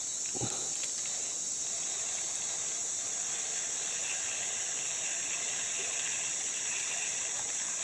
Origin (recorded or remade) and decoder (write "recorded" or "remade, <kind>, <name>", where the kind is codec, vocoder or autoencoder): recorded